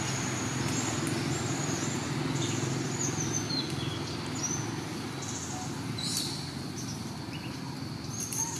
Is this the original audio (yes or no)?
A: yes